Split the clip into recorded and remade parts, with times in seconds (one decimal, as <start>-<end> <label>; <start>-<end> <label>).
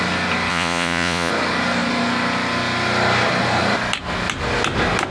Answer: 0.0-0.5 recorded; 0.5-1.3 remade; 1.3-5.1 recorded